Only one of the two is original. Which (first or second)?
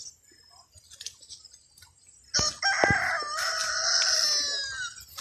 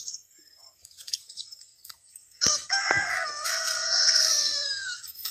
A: first